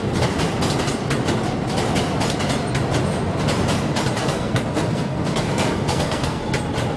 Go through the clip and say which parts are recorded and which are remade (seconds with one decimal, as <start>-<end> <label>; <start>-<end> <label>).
0.0-4.2 recorded; 4.2-6.4 remade; 6.4-7.0 recorded